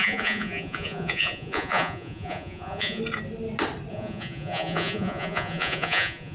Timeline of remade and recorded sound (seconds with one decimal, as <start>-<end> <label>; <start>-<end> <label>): 0.0-3.0 remade; 3.0-3.9 recorded; 3.9-6.3 remade